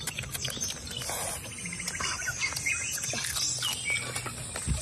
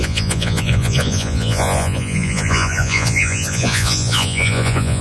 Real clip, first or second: first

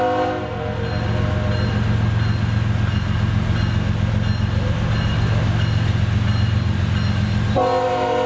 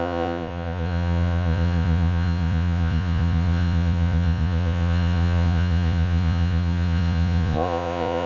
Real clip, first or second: first